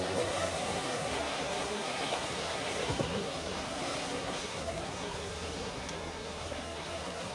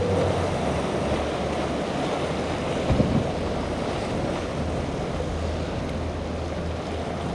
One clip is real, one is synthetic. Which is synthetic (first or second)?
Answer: first